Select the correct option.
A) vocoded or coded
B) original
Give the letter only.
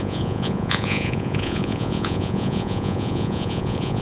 A